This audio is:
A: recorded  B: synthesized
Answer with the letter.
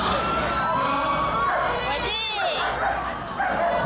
A